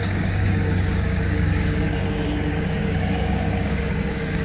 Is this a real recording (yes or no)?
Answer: no